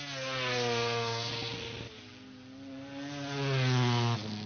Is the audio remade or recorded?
recorded